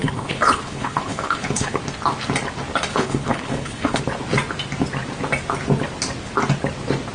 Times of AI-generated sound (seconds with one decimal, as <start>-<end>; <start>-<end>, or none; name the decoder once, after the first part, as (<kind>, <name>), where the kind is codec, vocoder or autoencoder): 0.0-1.8 (codec, HILCodec); 2.9-4.0